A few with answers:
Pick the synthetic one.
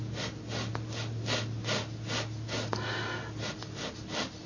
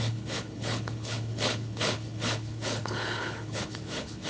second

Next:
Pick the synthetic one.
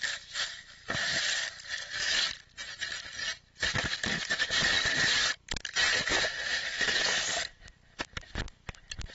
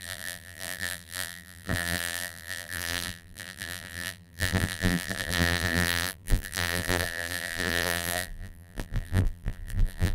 second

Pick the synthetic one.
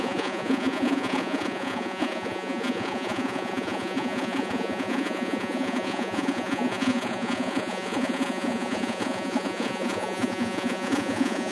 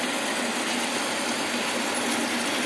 first